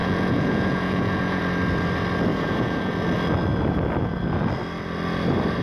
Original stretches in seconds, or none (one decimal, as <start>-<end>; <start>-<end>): 1.4-2.3; 2.9-5.6